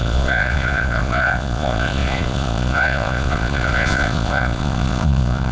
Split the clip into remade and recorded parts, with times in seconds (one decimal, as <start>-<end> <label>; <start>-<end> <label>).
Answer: 0.0-5.5 remade